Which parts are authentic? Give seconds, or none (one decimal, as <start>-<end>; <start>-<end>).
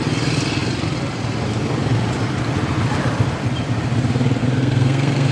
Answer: 0.0-4.4